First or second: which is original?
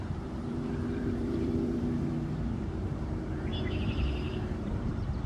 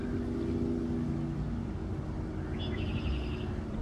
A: second